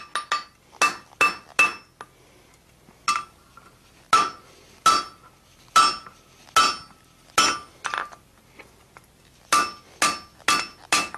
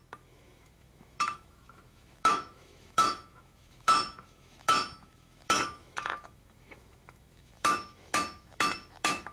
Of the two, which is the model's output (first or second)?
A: second